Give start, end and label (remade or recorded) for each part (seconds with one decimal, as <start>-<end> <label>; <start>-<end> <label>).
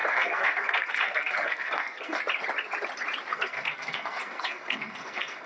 0.0-2.2 remade; 2.2-3.3 recorded; 3.3-5.5 remade